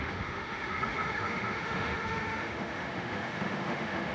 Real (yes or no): no